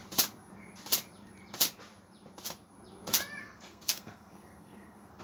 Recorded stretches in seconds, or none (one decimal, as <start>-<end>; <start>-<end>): 0.0-3.4